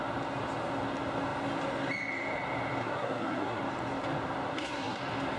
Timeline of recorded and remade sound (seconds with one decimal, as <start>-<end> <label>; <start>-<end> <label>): 0.0-2.8 recorded; 2.8-3.6 remade; 3.6-4.5 recorded; 4.5-5.0 remade; 5.0-5.4 recorded